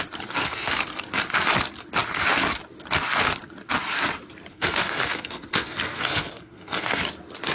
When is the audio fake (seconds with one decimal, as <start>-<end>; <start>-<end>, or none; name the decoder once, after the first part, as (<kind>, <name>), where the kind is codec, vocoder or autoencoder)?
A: 0.4-1.0 (codec, SNAC); 4.5-7.0